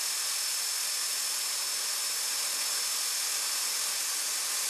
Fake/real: real